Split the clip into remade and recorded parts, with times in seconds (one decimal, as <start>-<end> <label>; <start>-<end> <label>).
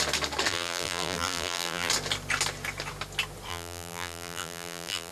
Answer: 0.0-0.5 recorded; 0.5-1.9 remade; 1.9-3.5 recorded; 3.5-5.1 remade